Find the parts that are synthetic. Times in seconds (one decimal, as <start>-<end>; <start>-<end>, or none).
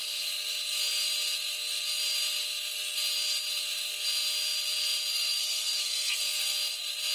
5.1-6.2